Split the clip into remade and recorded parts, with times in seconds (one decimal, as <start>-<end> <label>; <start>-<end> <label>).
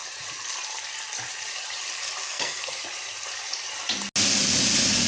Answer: 0.0-2.2 recorded; 2.2-2.8 remade; 2.8-5.1 recorded